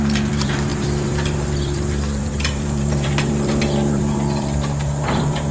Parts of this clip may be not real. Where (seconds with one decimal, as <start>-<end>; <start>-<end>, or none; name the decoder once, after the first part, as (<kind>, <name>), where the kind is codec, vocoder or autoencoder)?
0.0-5.5 (vocoder, BigVGAN v2)